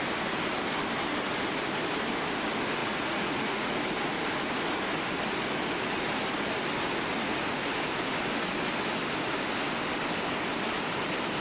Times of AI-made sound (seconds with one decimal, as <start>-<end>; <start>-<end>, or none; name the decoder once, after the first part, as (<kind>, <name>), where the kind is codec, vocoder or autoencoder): 2.8-3.8 (vocoder, Vocos)